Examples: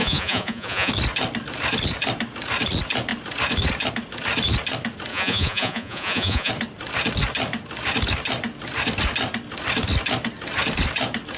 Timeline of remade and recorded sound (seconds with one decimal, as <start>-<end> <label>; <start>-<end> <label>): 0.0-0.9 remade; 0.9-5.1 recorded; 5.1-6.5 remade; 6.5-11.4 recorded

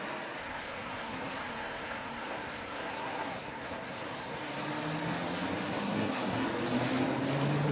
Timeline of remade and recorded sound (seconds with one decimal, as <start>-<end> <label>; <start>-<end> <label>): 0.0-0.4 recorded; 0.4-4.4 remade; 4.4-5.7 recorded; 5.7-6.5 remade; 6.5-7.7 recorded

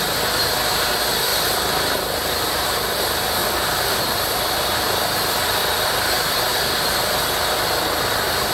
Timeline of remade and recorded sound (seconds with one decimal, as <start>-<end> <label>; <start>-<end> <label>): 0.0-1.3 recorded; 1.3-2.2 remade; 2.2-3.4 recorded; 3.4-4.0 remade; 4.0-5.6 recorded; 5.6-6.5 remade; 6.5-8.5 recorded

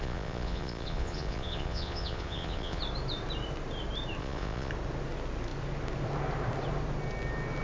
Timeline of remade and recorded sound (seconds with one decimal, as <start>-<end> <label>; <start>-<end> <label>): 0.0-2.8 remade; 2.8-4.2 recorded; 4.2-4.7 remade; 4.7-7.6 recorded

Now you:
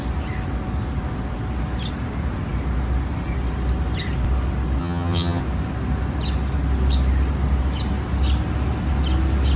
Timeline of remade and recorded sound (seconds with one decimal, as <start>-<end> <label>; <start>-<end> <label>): 0.0-4.8 recorded; 4.8-5.4 remade; 5.4-9.6 recorded